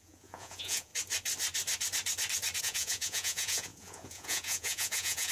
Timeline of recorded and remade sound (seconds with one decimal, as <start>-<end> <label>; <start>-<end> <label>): 0.0-0.9 remade; 0.9-2.6 recorded; 2.6-5.3 remade